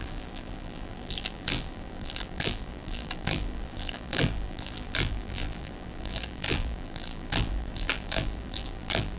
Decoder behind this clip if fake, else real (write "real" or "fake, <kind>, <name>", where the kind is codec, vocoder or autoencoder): fake, vocoder, BigVGAN v2